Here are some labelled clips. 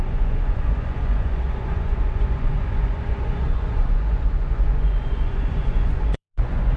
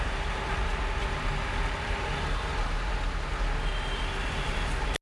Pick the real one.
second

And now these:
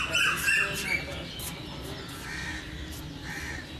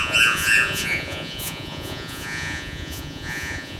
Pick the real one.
first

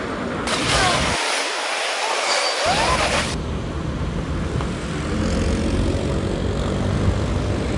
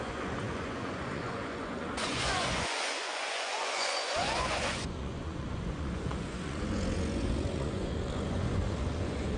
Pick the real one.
first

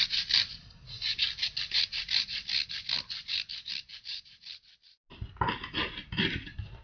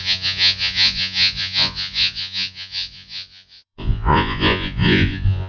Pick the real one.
first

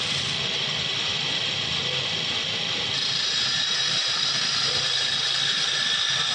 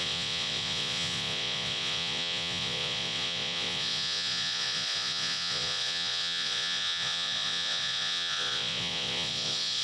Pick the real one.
first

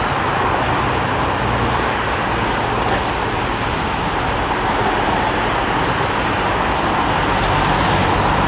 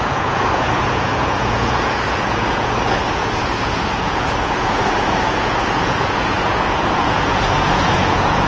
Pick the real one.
first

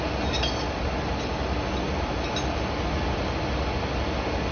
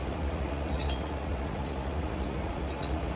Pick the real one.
first